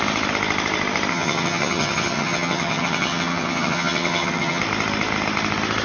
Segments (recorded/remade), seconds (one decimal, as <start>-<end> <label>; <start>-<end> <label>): 0.0-1.1 recorded; 1.1-4.6 remade; 4.6-5.8 recorded